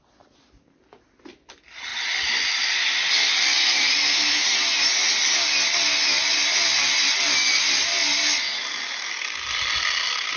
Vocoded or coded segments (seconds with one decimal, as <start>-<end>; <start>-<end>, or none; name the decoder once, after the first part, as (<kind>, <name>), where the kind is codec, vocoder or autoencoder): none